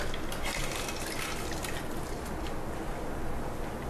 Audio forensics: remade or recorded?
recorded